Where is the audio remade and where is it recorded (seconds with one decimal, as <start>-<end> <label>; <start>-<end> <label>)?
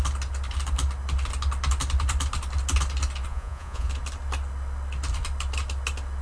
0.0-3.3 recorded; 3.3-3.9 remade; 3.9-6.2 recorded